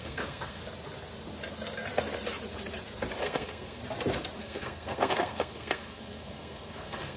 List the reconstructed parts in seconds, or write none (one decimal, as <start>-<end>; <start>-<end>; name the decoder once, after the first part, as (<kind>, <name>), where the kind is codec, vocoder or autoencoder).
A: 0.0-0.6 (codec, SNAC); 3.2-3.8; 4.4-7.2

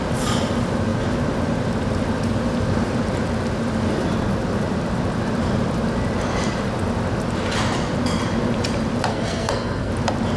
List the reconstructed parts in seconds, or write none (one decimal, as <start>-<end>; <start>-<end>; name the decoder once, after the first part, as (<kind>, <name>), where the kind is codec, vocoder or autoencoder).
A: 9.1-9.9 (codec, SNAC)